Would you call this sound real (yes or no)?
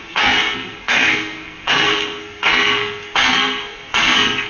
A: no